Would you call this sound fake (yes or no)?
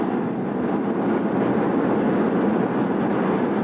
no